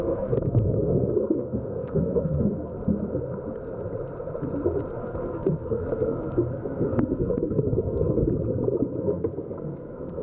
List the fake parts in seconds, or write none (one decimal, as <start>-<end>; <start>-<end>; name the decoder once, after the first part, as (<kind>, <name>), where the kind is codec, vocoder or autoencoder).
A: 0.0-2.7 (codec, SNAC); 5.0-8.2; 9.0-10.2